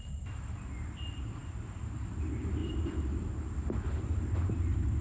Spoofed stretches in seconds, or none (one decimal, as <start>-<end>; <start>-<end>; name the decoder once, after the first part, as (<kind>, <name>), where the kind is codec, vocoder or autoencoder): none